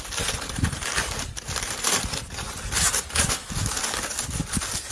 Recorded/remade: recorded